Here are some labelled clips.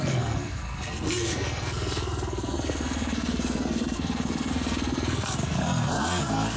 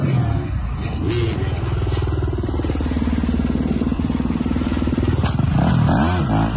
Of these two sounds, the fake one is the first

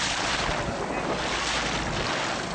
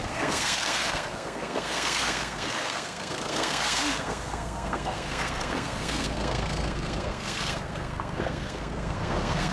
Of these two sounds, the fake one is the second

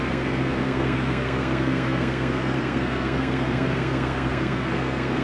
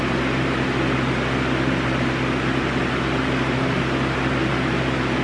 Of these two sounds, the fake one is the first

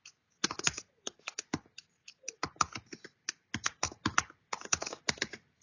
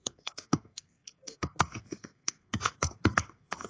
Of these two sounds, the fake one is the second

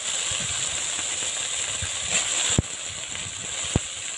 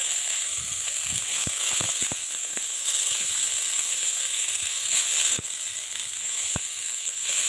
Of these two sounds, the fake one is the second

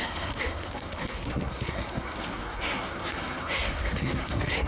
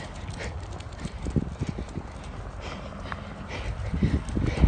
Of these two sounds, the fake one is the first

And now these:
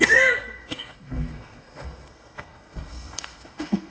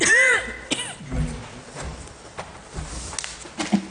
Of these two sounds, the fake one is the first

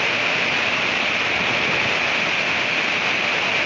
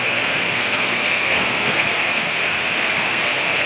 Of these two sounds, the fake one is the second